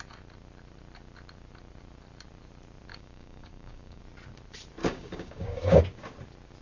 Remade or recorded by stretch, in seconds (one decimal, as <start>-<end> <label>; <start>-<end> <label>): 0.0-2.9 recorded; 2.9-4.0 remade; 4.0-4.8 recorded; 4.8-5.8 remade; 5.8-6.6 recorded